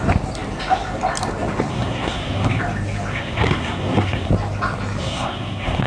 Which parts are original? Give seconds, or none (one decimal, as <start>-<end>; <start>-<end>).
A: 0.0-1.7; 2.6-3.1; 4.3-5.0